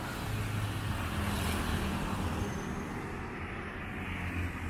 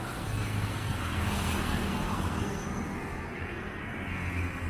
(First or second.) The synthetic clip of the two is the second